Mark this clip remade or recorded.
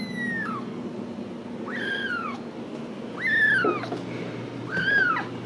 recorded